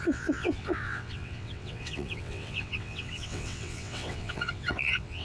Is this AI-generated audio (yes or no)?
yes